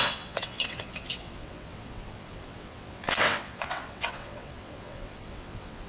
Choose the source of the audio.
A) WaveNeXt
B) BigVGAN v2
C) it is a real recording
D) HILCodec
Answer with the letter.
A